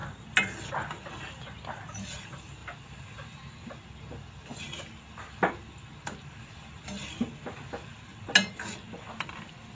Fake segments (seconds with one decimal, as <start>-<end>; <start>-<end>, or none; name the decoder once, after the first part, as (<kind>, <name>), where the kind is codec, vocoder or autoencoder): none